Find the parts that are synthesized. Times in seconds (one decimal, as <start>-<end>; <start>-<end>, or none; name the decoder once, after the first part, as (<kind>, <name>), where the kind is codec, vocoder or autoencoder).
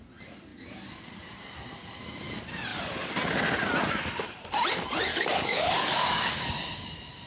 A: 5.1-6.3 (codec, DAC)